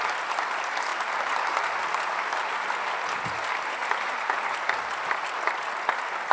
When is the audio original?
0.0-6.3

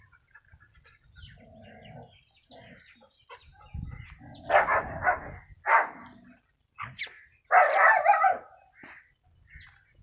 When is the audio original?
0.0-10.0

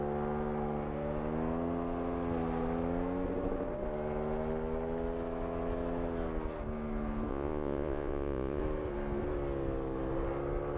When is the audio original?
0.0-7.3; 8.6-10.8

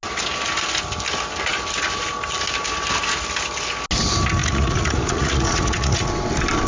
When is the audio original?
0.0-4.4; 6.1-6.7

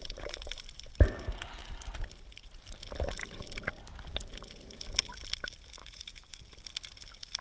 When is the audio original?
0.5-5.8; 6.4-7.4

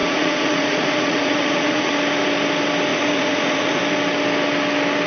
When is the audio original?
1.9-2.9; 3.8-5.1

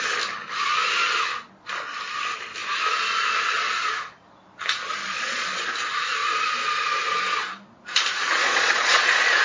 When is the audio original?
0.0-5.0; 5.7-8.4